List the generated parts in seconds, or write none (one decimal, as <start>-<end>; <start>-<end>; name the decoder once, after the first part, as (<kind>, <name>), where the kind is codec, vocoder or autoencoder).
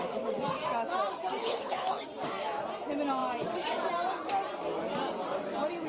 1.4-2.0 (codec, HILCodec)